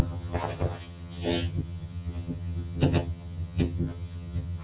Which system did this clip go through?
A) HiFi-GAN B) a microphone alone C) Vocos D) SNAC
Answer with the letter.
A